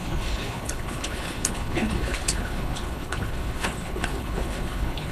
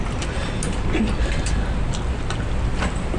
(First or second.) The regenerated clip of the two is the first